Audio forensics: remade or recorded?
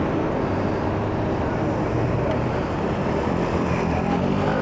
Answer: recorded